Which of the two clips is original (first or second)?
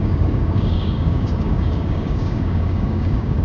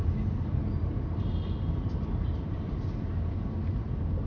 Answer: second